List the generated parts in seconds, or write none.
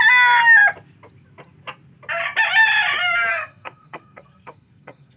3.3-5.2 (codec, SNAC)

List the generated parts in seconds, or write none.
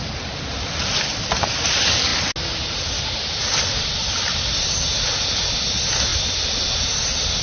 0.0-2.1 (vocoder, BigVGAN v2); 3.4-6.1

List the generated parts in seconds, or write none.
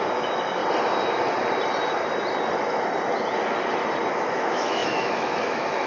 0.0-0.6 (autoencoder, DAC-VAE); 4.1-5.9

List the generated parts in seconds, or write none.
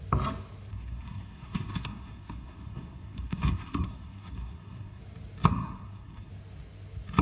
0.7-5.0 (codec, SNAC); 5.5-6.3